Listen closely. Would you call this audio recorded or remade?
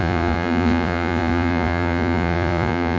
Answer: remade